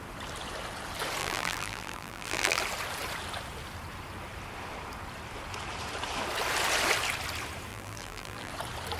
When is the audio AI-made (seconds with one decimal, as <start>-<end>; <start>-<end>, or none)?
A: 1.2-2.6; 7.7-8.5